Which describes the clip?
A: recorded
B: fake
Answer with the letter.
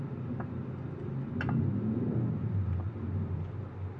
A